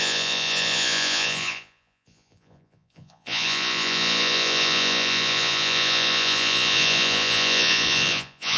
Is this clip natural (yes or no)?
no